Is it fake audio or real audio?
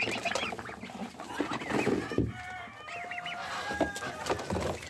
real